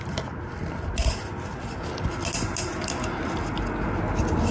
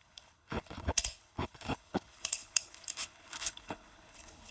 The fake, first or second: second